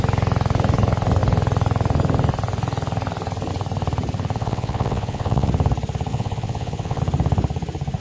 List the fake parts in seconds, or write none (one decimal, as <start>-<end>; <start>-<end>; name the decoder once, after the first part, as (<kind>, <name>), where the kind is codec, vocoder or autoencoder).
4.4-5.5 (vocoder, WaveNeXt); 6.1-7.0